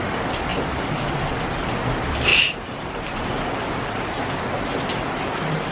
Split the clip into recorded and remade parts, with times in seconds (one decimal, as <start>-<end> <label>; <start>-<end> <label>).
0.0-0.5 recorded; 0.5-1.3 remade; 1.3-2.3 recorded; 2.3-3.3 remade; 3.3-5.7 recorded